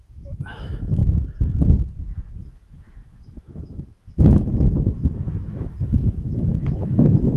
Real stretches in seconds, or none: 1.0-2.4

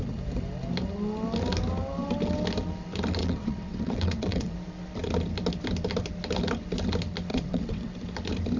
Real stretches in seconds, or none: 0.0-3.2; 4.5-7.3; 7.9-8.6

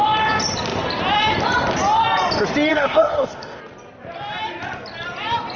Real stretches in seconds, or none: 0.0-2.7; 3.6-5.6

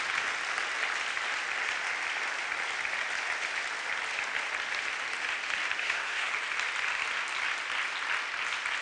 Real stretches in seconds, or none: 0.0-5.8; 6.3-8.8

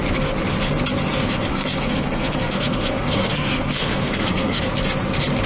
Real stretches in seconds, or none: 0.0-1.5; 4.6-5.5

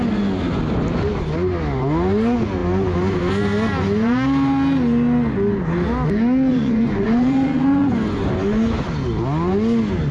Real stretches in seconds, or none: 0.0-6.5; 7.9-10.1